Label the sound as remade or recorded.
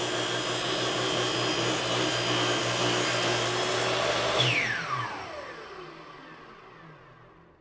recorded